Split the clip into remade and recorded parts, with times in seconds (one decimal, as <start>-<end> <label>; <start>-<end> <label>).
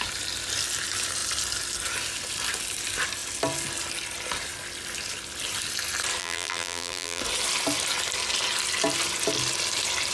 0.0-6.2 recorded; 6.2-7.2 remade; 7.2-10.1 recorded